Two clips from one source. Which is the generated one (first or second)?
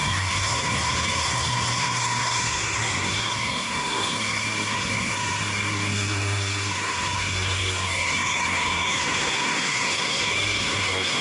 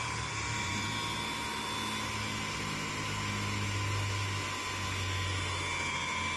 first